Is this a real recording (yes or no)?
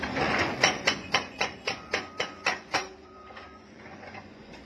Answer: no